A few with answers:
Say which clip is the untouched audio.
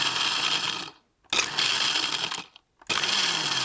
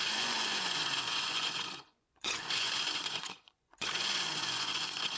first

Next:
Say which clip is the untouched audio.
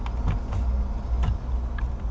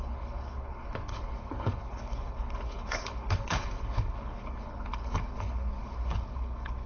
first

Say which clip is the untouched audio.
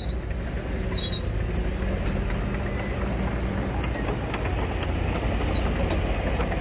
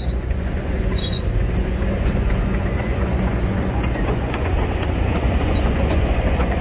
first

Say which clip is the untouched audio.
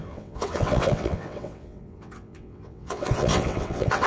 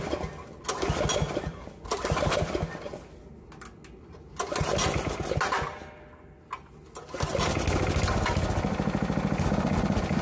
second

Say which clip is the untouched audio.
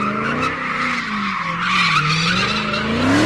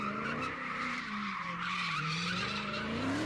first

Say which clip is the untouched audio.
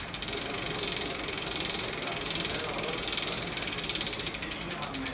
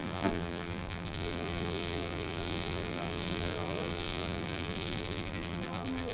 first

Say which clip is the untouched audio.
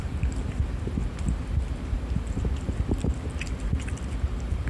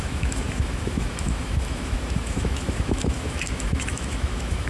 first